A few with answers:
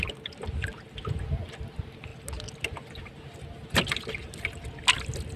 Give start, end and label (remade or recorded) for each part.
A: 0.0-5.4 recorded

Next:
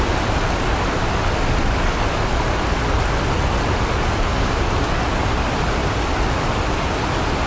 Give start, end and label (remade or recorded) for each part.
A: 0.0-7.5 recorded

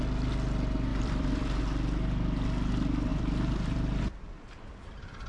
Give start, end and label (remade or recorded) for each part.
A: 0.0-0.9 recorded; 0.9-1.6 remade; 1.6-3.1 recorded; 3.1-4.0 remade; 4.0-5.3 recorded

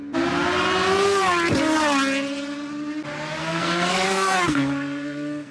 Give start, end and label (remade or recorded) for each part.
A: 0.0-3.4 recorded; 3.4-5.5 remade

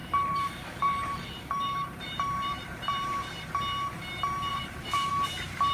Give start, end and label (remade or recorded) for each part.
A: 0.0-3.4 remade; 3.4-4.5 recorded; 4.5-5.1 remade; 5.1-5.7 recorded